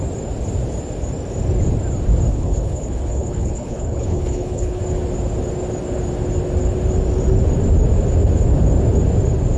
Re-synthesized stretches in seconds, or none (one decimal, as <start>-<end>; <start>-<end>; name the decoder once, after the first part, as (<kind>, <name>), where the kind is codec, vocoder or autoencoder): 2.3-4.8 (codec, HILCodec)